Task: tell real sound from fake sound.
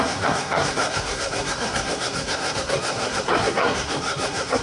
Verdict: fake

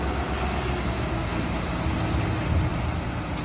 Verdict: real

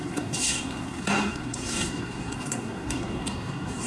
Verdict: fake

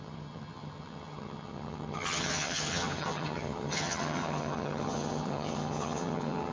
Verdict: fake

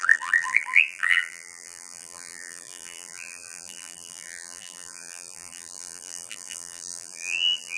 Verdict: fake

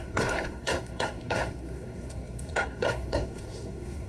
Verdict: fake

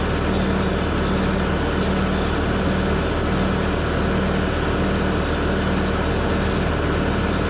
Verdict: real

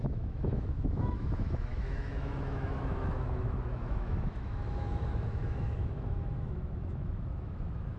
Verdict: fake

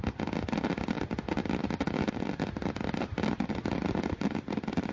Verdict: real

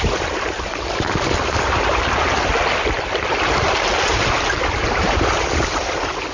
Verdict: real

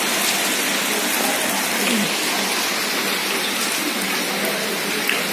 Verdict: real